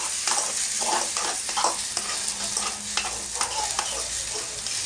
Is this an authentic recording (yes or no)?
yes